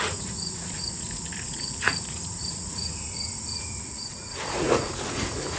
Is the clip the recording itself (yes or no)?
no